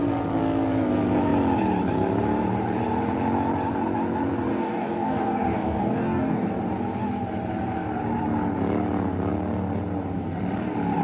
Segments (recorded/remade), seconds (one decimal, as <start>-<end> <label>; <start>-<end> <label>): 0.0-4.5 recorded; 4.5-6.6 remade; 6.6-11.0 recorded